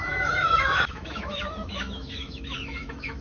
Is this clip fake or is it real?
fake